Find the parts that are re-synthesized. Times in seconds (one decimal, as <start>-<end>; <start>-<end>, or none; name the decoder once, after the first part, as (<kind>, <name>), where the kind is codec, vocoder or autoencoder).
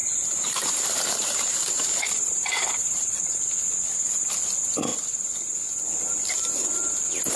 0.0-3.4 (vocoder, BigVGAN v2)